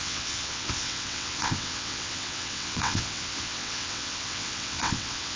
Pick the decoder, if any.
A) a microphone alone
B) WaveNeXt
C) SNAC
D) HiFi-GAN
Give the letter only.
B